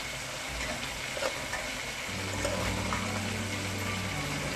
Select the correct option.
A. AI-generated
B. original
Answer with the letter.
B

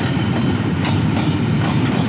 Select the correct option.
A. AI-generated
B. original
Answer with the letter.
B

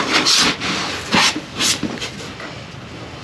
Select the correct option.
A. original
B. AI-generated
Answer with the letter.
A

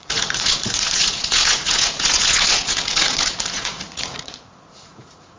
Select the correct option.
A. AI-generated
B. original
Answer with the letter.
A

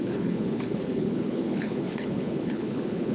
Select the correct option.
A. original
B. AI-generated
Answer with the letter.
B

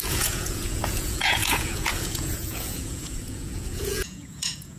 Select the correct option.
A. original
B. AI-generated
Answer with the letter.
B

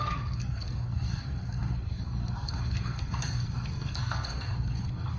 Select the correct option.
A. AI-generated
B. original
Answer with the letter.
A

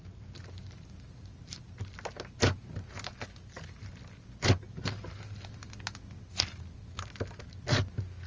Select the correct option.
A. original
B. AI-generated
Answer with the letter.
A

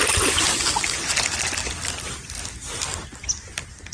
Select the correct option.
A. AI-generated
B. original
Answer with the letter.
B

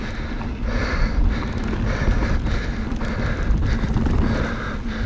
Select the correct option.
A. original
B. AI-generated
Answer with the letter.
A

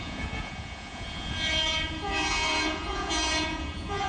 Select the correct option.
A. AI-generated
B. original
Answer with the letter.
A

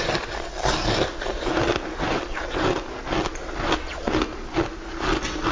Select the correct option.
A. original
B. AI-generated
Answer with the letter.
A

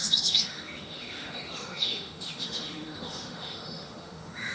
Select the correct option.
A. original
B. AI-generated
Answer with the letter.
B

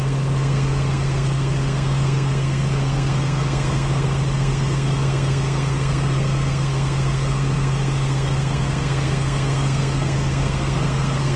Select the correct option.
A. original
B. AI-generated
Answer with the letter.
B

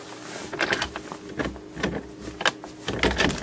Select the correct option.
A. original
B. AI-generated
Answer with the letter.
A